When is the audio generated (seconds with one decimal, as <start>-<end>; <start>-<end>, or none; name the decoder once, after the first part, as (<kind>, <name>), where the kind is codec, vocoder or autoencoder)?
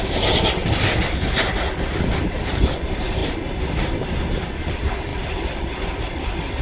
0.0-0.6 (vocoder, BigVGAN v2); 2.2-3.2; 4.6-5.1